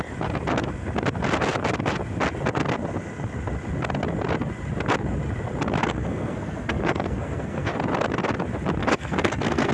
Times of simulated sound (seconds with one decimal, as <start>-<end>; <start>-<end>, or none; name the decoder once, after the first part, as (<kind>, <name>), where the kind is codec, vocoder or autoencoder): 5.8-7.7 (codec, SNAC); 8.8-9.7